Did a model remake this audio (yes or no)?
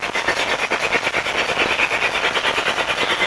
no